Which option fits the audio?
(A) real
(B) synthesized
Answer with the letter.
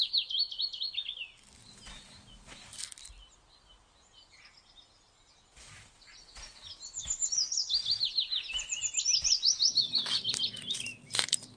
A